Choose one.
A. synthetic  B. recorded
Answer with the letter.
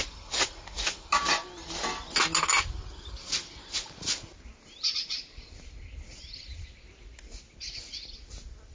B